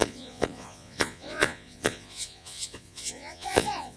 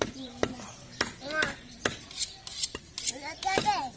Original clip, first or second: second